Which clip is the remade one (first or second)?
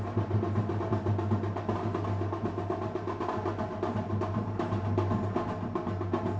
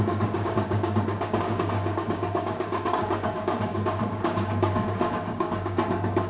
second